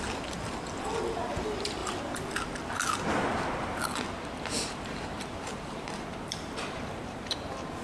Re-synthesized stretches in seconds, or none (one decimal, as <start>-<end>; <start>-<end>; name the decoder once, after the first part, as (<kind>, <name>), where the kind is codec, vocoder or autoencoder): 4.7-6.8 (vocoder, BigVGAN v2)